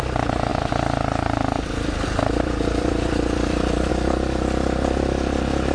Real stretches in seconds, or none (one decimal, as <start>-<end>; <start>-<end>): 0.0-0.5; 3.9-5.7